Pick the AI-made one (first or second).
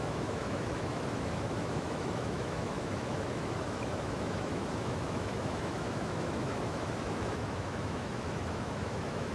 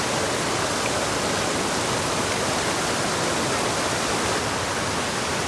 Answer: first